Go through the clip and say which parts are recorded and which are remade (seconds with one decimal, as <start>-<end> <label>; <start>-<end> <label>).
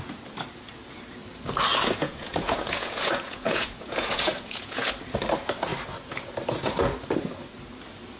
0.0-1.7 recorded; 1.7-4.9 remade; 4.9-8.2 recorded